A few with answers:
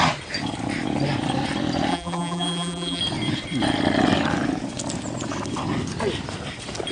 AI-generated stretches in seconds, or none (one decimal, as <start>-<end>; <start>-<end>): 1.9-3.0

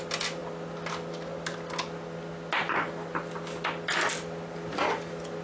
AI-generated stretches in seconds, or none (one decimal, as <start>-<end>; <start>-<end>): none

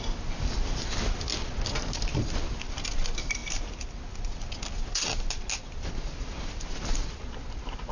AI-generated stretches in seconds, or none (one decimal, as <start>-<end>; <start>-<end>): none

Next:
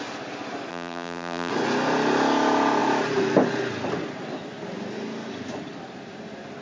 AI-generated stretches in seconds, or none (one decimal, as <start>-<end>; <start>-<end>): 0.7-1.5

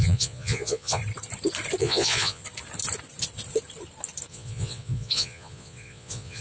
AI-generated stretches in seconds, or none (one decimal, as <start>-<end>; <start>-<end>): 0.0-1.0; 1.8-2.4; 4.3-6.4